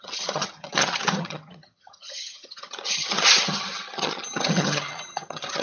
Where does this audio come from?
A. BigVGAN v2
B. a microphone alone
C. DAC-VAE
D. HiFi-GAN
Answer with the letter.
D